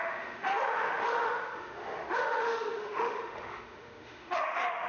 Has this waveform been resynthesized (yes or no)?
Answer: yes